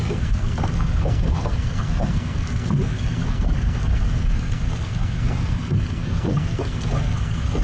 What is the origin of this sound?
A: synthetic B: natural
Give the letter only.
A